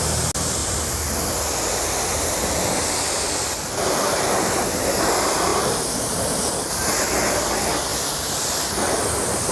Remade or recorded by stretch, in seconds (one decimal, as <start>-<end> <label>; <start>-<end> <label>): 0.0-5.5 recorded; 5.5-7.0 remade; 7.0-7.9 recorded; 7.9-9.0 remade; 9.0-9.5 recorded